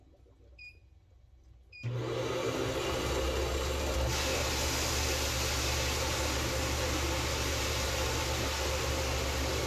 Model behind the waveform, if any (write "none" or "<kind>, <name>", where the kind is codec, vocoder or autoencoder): none